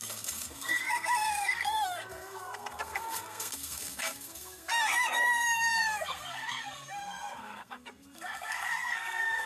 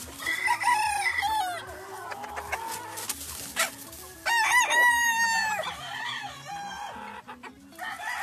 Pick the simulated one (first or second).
first